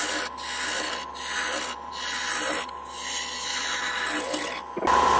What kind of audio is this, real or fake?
real